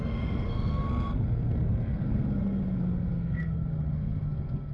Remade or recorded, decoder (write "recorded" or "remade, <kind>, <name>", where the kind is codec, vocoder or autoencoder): remade, codec, SNAC